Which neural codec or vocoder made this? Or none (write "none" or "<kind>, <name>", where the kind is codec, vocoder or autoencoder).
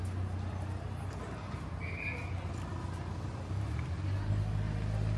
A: none